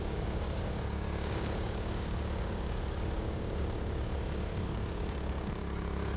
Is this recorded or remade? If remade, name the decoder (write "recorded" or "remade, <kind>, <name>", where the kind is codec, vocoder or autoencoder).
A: remade, codec, DAC